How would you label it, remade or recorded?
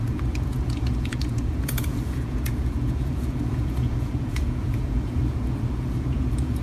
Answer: remade